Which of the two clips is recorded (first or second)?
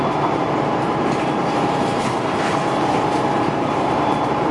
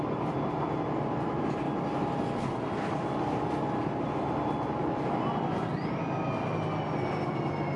second